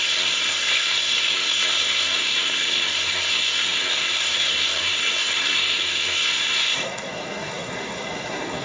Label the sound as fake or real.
fake